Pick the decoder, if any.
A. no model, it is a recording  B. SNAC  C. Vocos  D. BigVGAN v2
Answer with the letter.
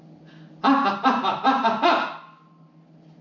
A